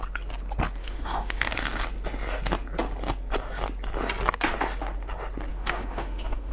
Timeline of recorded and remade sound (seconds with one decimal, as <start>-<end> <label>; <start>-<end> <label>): 0.0-0.8 recorded; 0.8-1.5 remade; 1.5-5.5 recorded; 5.5-6.5 remade